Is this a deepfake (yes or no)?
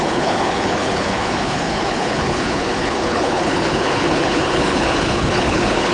yes